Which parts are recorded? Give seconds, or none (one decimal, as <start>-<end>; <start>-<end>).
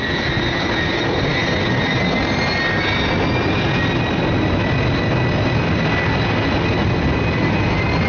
0.0-8.1